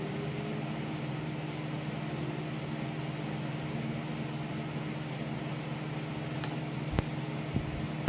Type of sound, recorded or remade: recorded